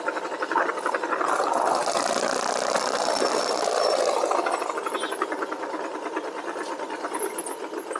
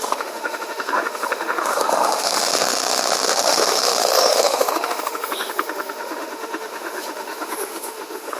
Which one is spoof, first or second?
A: second